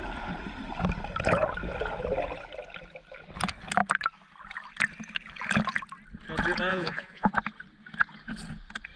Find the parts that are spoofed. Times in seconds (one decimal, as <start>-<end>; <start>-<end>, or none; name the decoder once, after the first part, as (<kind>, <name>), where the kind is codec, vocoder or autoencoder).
6.7-7.3 (vocoder, Vocos)